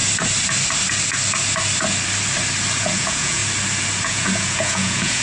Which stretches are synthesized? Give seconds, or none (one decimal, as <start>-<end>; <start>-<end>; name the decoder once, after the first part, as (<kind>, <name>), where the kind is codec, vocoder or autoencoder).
2.8-3.4 (vocoder, Vocos); 4.0-5.2